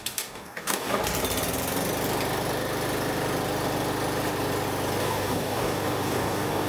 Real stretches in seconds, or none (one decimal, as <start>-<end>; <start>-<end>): 1.0-5.0